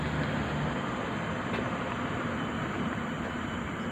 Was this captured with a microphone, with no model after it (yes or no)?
yes